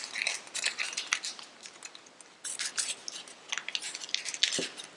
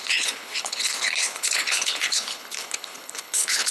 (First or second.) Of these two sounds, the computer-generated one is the second